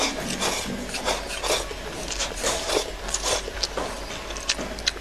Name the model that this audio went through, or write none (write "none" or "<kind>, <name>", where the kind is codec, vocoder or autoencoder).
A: none